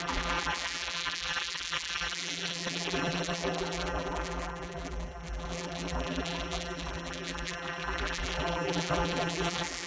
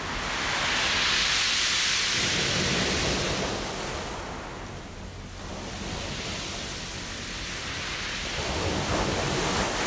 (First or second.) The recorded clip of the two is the second